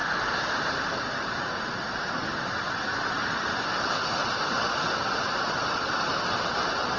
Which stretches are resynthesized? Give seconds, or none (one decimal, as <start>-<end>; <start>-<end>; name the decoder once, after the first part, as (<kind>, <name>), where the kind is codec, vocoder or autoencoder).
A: 0.0-2.0 (vocoder, BigVGAN v2)